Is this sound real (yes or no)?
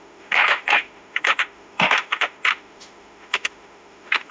no